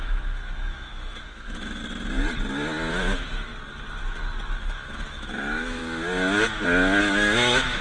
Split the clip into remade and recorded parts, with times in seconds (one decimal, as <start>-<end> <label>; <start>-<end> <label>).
0.0-1.8 remade; 1.8-2.9 recorded; 2.9-3.5 remade; 3.5-4.6 recorded; 4.6-5.8 remade; 5.8-7.0 recorded; 7.0-7.8 remade

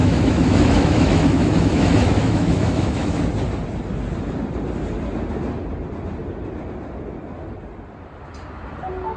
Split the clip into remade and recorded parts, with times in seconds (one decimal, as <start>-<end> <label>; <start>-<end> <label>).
0.0-3.2 remade; 3.2-9.2 recorded